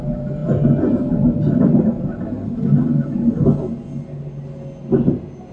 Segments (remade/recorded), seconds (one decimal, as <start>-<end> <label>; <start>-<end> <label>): 0.0-5.5 recorded